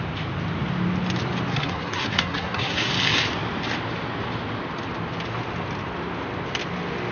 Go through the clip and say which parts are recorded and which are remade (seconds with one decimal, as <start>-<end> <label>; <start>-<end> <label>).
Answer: 0.0-1.5 recorded; 1.5-2.9 remade; 2.9-7.1 recorded